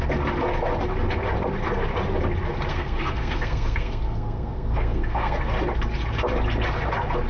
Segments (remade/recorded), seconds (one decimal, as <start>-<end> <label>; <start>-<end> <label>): 0.0-2.7 recorded; 2.7-5.4 remade; 5.4-7.3 recorded